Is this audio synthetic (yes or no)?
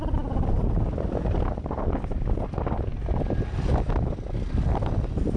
no